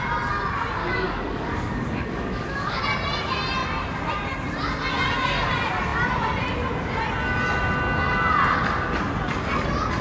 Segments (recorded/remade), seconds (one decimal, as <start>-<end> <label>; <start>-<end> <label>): 0.0-0.8 recorded; 0.8-2.8 remade; 2.8-10.0 recorded